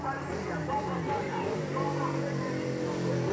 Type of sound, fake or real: real